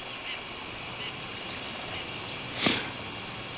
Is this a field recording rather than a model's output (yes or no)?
yes